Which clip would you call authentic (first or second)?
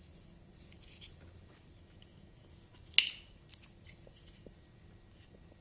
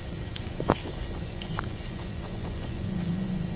first